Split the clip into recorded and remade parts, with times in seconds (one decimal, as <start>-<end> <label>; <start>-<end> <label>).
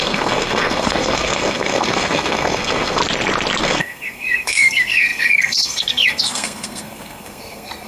0.0-3.0 remade; 3.0-3.6 recorded; 3.6-7.9 remade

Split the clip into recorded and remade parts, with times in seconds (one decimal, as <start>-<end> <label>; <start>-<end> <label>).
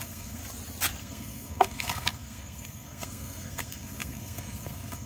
0.0-0.4 remade; 0.4-1.0 recorded; 1.0-5.1 remade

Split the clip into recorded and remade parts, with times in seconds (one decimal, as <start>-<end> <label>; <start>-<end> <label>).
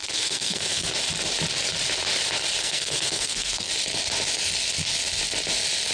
0.0-0.9 remade; 0.9-2.6 recorded; 2.6-3.7 remade; 3.7-5.9 recorded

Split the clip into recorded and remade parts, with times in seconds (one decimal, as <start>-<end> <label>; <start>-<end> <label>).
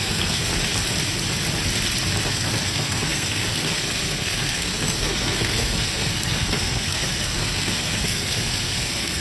0.0-0.5 remade; 0.5-2.3 recorded; 2.3-9.2 remade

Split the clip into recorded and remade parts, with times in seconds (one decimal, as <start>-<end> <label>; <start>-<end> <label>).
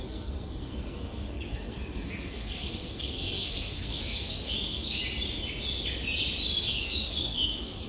0.0-5.0 remade; 5.0-6.6 recorded; 6.6-7.9 remade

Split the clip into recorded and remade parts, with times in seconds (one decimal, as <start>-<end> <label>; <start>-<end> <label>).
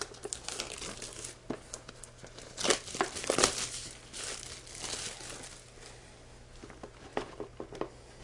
0.0-8.2 recorded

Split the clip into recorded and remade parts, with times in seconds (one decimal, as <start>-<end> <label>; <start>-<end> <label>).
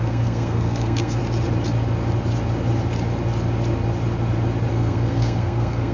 0.0-1.2 remade; 1.2-4.7 recorded; 4.7-5.9 remade